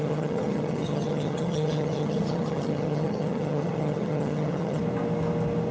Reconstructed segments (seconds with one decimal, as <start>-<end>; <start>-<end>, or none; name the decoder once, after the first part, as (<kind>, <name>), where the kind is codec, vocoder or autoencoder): 0.0-4.8 (vocoder, HiFi-GAN)